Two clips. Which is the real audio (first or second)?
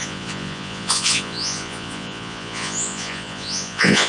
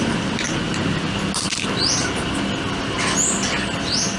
second